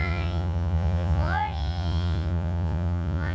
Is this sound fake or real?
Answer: fake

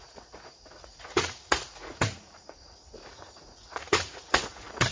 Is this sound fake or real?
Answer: fake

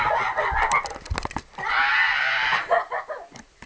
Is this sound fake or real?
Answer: real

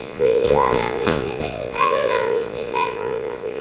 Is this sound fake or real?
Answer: fake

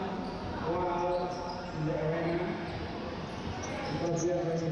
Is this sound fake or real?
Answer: real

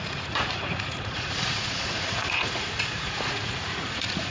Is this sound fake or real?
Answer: fake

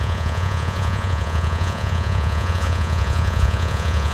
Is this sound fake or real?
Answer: fake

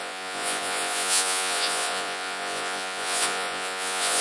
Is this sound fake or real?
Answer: fake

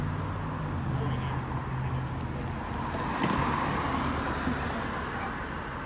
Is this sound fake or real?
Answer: real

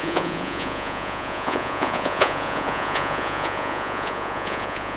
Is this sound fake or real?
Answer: fake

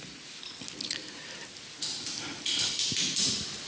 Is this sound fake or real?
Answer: real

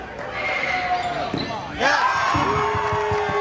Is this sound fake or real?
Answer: real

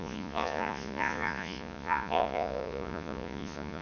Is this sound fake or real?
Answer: fake